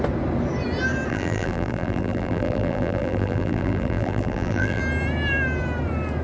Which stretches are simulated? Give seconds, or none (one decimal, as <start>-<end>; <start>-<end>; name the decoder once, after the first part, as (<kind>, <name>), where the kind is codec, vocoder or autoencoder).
1.1-4.8 (vocoder, BigVGAN v2)